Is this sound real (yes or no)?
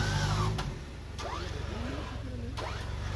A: yes